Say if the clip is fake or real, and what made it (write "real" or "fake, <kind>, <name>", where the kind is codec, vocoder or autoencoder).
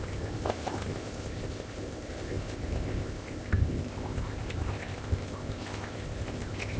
fake, codec, ZipCodec